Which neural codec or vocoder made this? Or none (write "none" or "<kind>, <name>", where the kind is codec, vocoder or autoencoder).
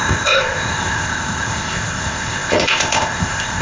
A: codec, ZipCodec